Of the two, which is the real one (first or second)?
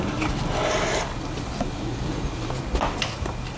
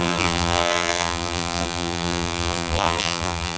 first